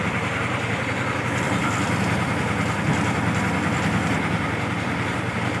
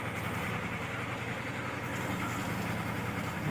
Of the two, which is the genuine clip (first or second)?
second